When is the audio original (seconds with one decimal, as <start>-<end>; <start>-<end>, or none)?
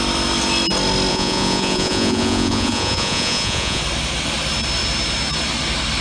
0.0-1.1; 3.8-6.0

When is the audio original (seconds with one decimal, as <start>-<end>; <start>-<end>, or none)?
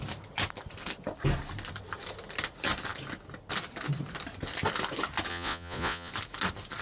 0.0-5.3; 6.1-6.8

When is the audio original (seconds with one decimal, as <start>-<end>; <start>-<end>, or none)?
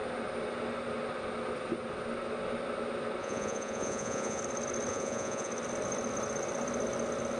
0.0-3.2; 4.4-4.9; 5.5-7.4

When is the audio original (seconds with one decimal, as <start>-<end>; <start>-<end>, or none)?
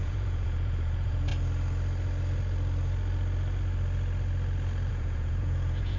1.3-4.9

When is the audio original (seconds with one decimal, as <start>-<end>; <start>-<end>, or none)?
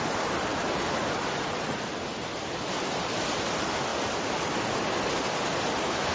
0.0-6.1